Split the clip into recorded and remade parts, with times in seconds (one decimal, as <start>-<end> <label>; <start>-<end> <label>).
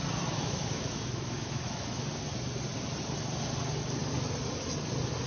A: 0.0-0.4 recorded; 0.4-2.0 remade; 2.0-5.3 recorded